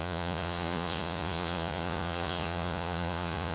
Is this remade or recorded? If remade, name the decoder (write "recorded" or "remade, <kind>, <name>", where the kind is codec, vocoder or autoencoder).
remade, vocoder, Vocos